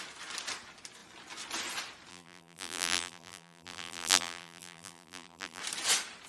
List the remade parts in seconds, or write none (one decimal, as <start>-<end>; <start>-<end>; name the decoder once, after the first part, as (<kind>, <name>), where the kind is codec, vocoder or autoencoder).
2.1-5.6 (vocoder, BigVGAN v2)